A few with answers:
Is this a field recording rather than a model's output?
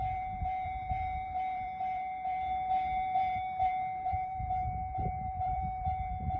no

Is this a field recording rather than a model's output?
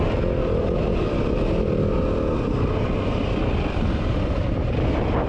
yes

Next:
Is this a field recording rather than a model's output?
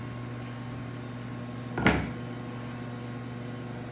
yes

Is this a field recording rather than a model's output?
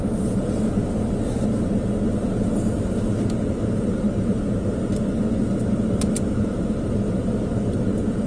yes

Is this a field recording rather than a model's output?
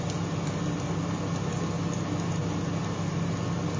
yes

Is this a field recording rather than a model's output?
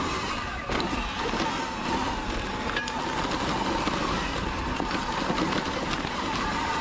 yes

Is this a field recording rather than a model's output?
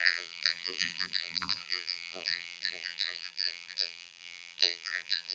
no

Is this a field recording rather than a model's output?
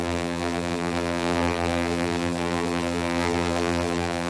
no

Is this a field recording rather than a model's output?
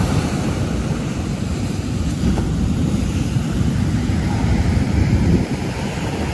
no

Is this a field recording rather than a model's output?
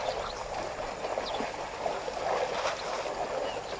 yes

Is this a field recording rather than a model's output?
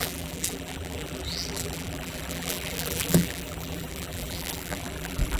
no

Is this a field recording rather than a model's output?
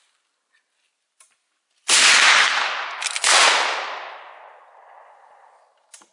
yes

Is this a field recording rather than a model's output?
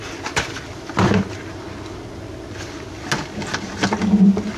yes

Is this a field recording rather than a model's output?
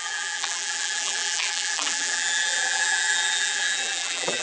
no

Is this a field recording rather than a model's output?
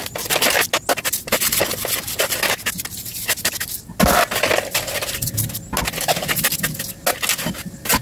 yes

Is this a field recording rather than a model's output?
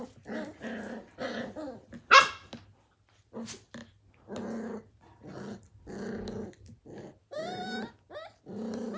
yes